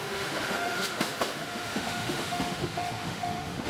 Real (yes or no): no